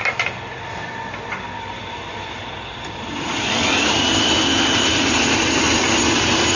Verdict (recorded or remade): recorded